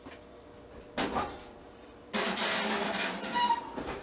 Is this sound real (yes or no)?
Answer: no